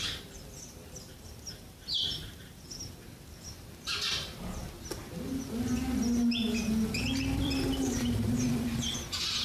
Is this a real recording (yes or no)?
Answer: no